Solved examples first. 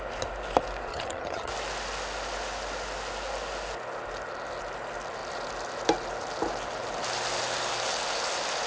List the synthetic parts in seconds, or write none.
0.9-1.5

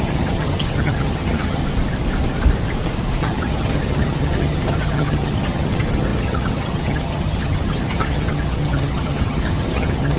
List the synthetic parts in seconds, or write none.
0.0-1.6; 3.2-10.2

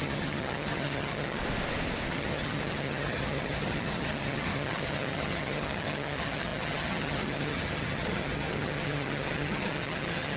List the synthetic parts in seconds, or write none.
0.0-1.4; 2.1-10.4

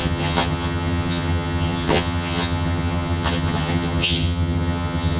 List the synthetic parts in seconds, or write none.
0.0-5.2